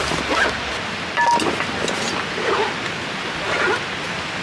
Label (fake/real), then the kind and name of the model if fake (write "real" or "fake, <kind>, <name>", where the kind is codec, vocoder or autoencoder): real